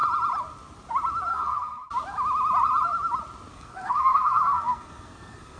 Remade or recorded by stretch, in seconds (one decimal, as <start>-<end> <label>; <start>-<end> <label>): 0.0-1.3 recorded; 1.3-1.9 remade; 1.9-3.5 recorded; 3.5-5.6 remade